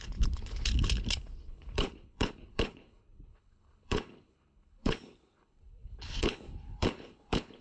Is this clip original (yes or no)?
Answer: no